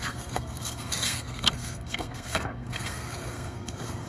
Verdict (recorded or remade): remade